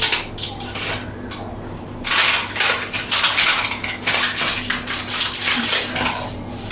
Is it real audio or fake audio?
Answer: real